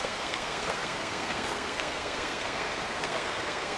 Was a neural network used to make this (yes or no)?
yes